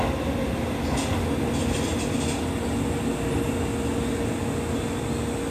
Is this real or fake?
real